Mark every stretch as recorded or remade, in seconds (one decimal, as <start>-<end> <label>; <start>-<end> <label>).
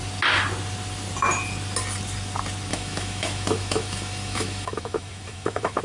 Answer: 0.0-2.7 recorded; 2.7-5.8 remade